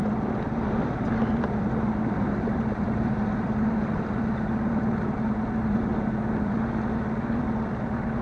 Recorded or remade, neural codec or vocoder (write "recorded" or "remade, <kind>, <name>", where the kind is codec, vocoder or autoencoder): remade, vocoder, BigVGAN v2